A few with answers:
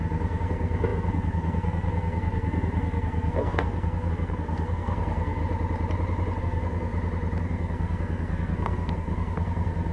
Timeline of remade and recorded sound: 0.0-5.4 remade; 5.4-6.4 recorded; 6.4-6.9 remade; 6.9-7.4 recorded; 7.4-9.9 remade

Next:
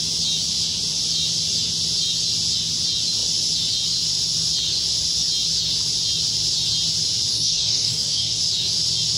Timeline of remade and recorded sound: 0.0-7.3 recorded; 7.3-8.4 remade; 8.4-9.2 recorded